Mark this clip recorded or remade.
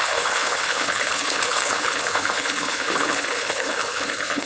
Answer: remade